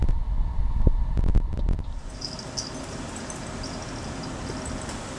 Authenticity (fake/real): real